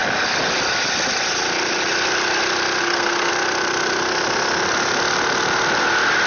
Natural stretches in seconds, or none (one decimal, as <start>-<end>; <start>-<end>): 0.0-2.8; 3.3-6.3